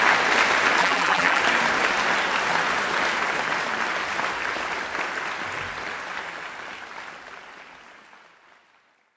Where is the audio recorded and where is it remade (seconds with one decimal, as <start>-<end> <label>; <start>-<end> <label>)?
0.0-0.8 recorded; 0.8-1.4 remade; 1.4-9.2 recorded